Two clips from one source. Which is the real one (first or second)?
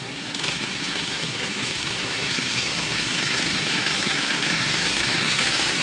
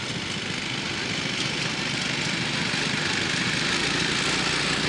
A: second